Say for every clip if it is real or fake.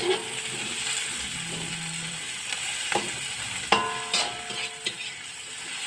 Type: real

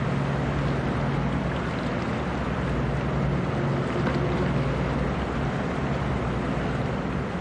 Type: real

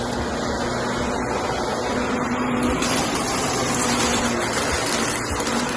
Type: real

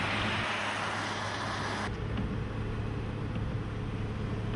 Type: real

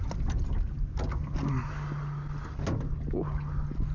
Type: real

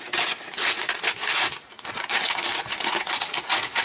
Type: fake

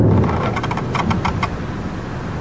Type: real